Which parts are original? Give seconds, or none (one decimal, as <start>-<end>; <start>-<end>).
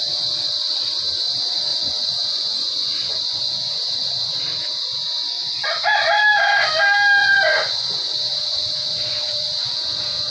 0.0-1.7; 4.4-7.2